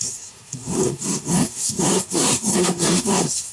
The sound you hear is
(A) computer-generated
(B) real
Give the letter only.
A